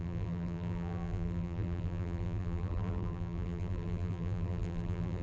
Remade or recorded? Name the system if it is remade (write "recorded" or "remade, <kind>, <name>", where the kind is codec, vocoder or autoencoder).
remade, vocoder, BigVGAN v2